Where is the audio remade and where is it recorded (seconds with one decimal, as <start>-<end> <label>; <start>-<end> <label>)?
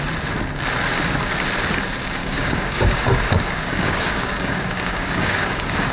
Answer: 0.0-2.2 recorded; 2.2-5.9 remade